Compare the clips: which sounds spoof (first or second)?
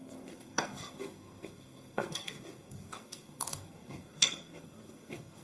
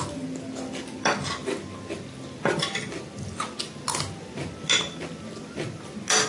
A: first